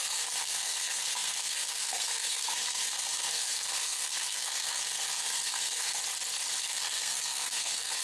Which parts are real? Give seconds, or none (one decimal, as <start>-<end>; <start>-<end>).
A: 6.0-6.6